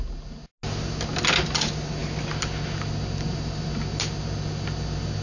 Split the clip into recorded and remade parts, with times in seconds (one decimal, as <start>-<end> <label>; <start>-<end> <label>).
0.0-5.2 recorded